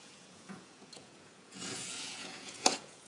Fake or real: fake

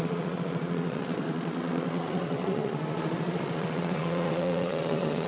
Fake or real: fake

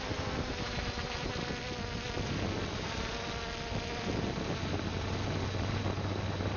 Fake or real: real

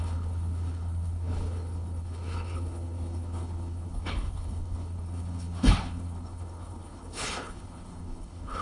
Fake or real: fake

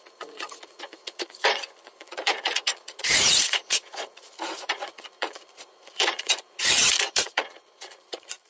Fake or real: fake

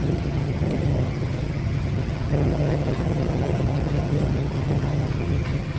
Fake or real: fake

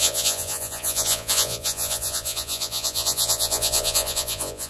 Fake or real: fake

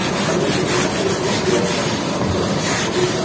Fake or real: real